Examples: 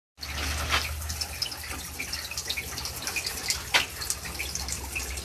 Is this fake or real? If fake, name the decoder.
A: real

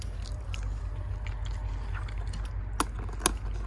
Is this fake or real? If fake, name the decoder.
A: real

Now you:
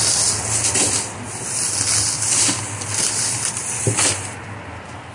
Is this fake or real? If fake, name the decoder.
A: real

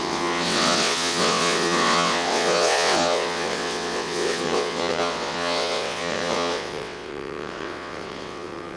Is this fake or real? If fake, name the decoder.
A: fake, vocoder, WaveNeXt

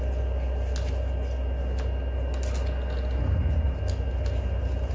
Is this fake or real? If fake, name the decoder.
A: real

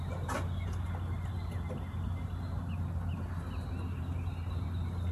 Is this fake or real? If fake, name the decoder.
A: real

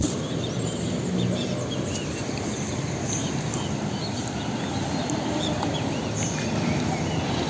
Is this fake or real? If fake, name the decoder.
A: real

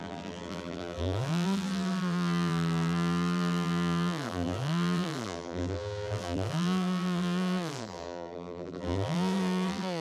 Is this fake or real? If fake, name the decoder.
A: fake, vocoder, BigVGAN v2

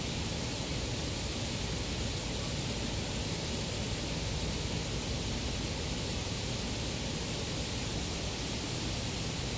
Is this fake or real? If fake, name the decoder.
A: real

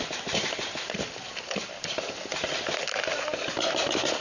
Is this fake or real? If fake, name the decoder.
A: real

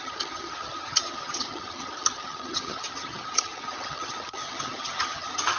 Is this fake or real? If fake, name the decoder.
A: fake, vocoder, HiFi-GAN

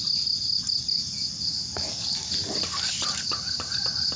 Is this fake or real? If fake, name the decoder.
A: real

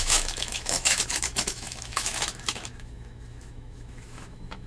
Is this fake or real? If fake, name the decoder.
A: fake, autoencoder, DAC-VAE